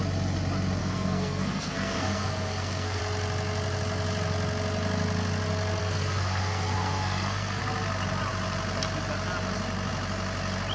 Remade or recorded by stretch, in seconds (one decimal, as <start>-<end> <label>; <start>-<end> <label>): 0.0-0.8 recorded; 0.8-3.0 remade; 3.0-5.8 recorded; 5.8-7.6 remade; 7.6-10.7 recorded